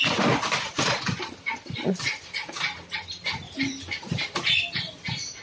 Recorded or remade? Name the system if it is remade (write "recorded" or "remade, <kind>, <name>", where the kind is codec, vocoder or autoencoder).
recorded